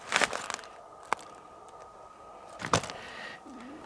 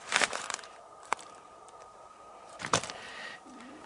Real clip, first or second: first